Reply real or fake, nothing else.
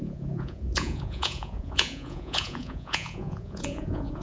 fake